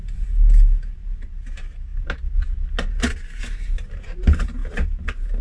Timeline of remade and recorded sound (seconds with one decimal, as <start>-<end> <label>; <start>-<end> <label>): 0.0-5.4 recorded